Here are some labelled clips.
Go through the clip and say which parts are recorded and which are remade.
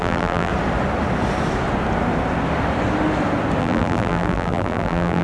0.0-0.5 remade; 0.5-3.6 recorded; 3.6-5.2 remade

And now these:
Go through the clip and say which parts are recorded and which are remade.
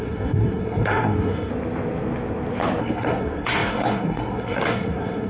0.0-1.5 remade; 1.5-2.8 recorded; 2.8-5.3 remade